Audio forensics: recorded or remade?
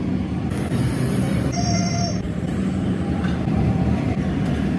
remade